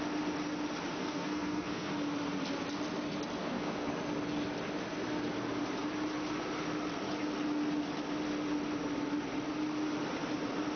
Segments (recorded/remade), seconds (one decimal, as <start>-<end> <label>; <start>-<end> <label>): 0.0-1.0 recorded; 1.0-1.9 remade; 1.9-3.4 recorded; 3.4-3.9 remade; 3.9-10.8 recorded